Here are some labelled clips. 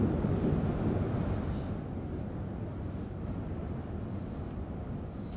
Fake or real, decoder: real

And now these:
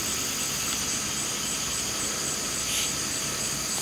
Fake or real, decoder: real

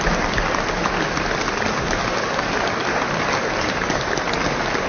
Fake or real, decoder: real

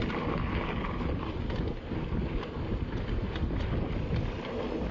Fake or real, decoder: real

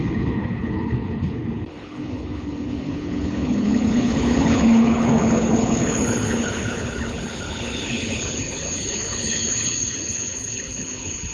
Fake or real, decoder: fake, codec, HILCodec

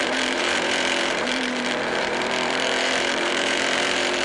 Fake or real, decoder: fake, vocoder, BigVGAN v2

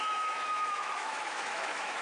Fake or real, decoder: fake, autoencoder, DAC-VAE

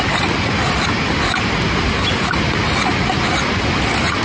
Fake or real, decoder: real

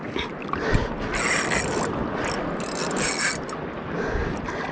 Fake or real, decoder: real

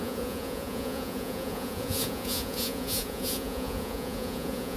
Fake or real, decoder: fake, vocoder, Vocos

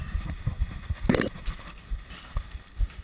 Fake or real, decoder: real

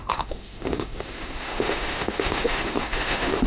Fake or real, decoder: fake, autoencoder, DAC-VAE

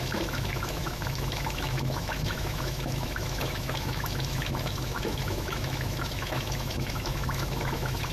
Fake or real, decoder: fake, autoencoder, DAC-VAE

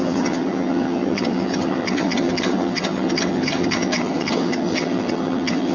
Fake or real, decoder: fake, vocoder, HiFi-GAN